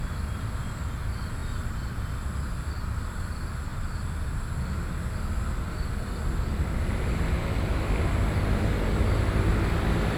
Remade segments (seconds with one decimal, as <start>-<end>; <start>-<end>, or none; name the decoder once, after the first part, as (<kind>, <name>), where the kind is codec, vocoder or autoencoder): none